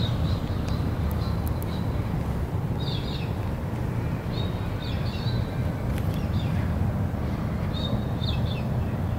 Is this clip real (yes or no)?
no